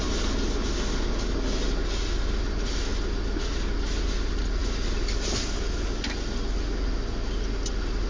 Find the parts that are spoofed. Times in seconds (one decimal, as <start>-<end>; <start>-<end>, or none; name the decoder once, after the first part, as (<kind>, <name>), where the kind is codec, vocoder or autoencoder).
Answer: none